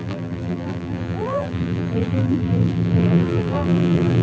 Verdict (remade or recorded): remade